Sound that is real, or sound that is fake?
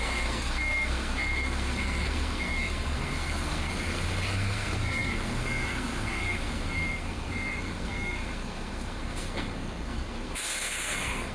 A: fake